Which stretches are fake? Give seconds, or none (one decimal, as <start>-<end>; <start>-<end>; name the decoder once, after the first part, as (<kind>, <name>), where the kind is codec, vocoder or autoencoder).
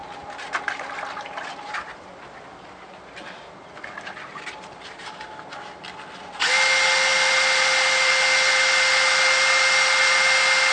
none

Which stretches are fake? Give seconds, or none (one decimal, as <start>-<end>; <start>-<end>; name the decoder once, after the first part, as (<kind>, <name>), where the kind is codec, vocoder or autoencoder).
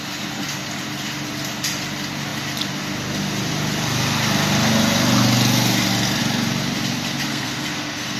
7.3-8.2 (codec, SNAC)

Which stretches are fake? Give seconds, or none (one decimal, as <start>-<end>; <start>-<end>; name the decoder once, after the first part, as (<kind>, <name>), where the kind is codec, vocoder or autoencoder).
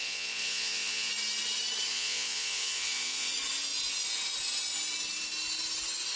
0.0-1.1 (vocoder, Vocos); 1.9-3.3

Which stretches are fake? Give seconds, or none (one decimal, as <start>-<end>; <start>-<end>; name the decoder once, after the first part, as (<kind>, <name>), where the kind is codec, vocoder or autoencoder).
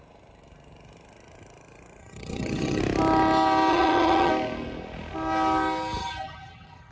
2.0-2.8 (vocoder, HiFi-GAN); 3.7-4.3; 6.0-6.9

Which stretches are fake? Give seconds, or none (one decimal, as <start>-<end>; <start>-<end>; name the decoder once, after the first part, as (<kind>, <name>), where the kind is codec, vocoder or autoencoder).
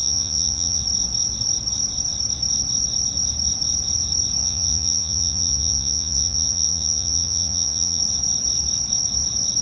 0.0-0.8 (vocoder, Vocos); 4.4-8.0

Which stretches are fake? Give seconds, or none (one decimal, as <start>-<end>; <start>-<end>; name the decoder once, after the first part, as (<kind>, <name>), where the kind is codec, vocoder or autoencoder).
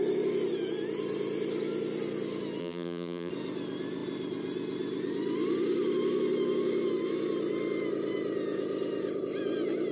2.6-3.3 (vocoder, BigVGAN v2)